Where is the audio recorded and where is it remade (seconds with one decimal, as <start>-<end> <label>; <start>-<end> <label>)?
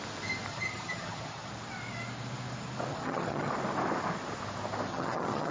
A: 0.0-0.5 recorded; 0.5-1.5 remade; 1.5-2.9 recorded; 2.9-3.5 remade; 3.5-4.9 recorded; 4.9-5.5 remade